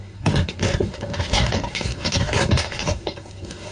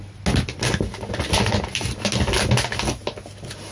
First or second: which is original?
second